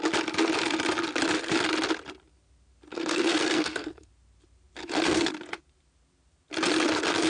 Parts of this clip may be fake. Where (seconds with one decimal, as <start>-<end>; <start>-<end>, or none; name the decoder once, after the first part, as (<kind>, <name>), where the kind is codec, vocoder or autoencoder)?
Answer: 2.9-4.1 (codec, SNAC); 4.8-5.3

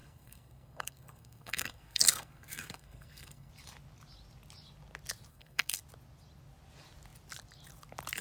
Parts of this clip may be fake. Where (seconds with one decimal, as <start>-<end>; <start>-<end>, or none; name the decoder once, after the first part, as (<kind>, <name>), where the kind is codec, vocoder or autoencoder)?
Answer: 0.0-3.5 (codec, SNAC); 5.3-5.8

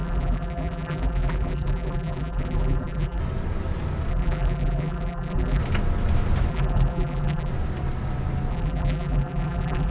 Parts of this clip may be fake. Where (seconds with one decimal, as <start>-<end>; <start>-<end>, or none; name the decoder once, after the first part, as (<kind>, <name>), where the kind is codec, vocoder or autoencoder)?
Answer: 0.0-3.2 (vocoder, BigVGAN v2); 4.1-5.6; 6.5-7.5; 8.5-9.9

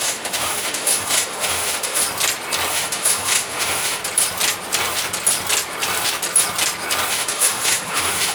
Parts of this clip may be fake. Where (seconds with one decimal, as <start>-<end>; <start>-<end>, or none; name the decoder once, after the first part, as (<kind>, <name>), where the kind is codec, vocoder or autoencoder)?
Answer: 0.0-2.0 (autoencoder, DAC-VAE); 2.7-4.0; 7.1-8.3

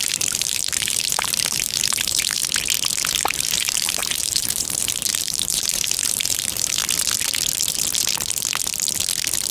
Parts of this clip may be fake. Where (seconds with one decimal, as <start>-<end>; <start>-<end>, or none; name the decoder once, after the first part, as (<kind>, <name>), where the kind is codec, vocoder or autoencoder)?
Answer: 0.0-2.4 (vocoder, BigVGAN v2); 3.1-6.8

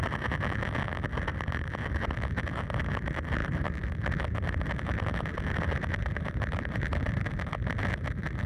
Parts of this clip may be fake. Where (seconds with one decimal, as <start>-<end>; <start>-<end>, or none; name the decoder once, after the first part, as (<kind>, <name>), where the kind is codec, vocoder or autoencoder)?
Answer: 3.4-7.8 (vocoder, BigVGAN v2)